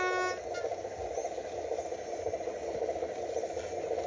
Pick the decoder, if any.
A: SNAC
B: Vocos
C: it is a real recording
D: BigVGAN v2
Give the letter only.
C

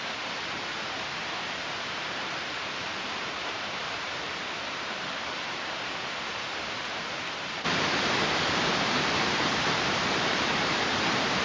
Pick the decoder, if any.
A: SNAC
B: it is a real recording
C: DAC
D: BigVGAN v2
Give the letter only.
D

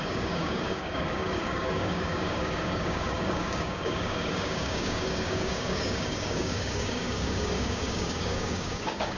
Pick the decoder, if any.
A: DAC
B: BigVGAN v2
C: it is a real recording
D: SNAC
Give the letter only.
A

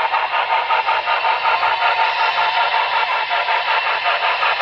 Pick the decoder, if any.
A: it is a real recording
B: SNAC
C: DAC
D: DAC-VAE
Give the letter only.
A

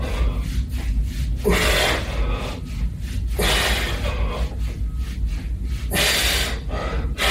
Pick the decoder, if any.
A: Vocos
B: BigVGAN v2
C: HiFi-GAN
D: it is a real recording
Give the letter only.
D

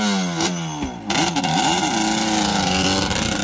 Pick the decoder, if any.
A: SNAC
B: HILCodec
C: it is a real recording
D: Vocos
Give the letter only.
C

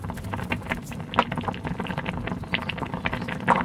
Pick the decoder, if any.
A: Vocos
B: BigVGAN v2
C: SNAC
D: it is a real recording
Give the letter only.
D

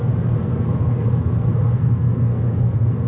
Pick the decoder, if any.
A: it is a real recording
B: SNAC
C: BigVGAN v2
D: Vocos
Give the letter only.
B